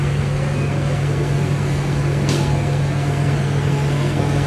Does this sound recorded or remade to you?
remade